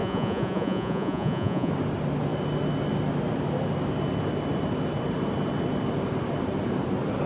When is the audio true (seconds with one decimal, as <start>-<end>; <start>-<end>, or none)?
1.7-7.3